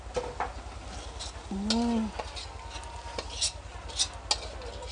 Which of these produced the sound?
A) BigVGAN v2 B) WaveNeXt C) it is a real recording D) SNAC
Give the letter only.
C